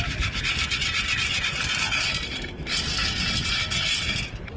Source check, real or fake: real